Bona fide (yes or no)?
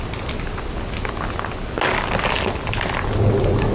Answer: yes